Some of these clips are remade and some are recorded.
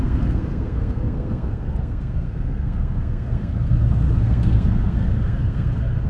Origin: remade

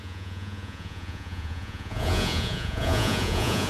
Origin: remade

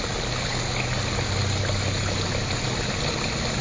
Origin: recorded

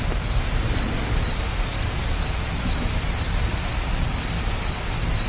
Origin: recorded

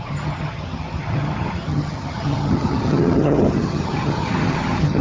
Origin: remade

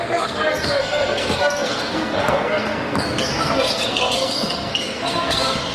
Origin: remade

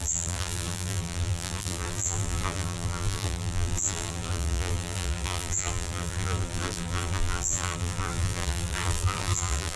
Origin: remade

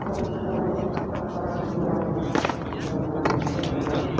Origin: recorded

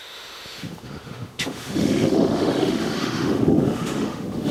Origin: remade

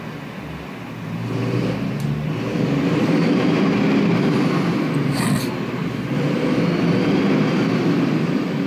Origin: recorded